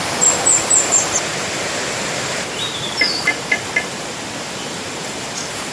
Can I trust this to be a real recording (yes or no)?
no